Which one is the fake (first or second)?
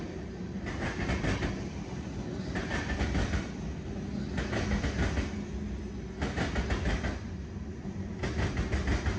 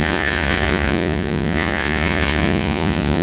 second